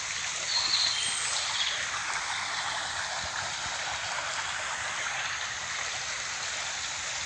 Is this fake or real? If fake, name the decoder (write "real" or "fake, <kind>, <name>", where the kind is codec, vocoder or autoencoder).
real